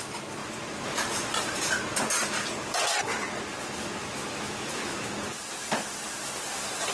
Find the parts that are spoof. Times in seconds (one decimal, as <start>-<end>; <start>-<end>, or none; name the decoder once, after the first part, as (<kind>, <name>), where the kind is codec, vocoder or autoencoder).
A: 4.0-5.4 (autoencoder, DAC-VAE)